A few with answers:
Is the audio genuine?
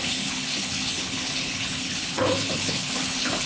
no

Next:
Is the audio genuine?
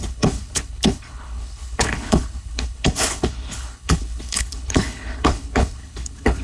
no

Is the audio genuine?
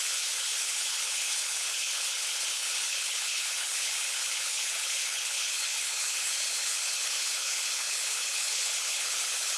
no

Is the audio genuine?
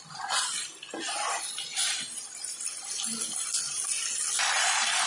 yes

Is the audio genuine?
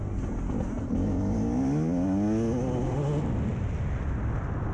yes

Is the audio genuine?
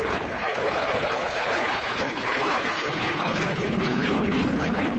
no